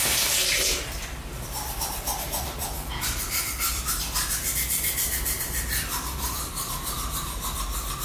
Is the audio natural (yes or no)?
no